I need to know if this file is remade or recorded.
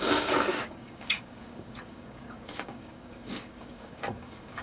remade